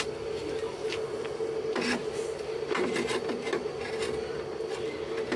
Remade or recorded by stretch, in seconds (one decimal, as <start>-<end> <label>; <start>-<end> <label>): 0.0-5.4 recorded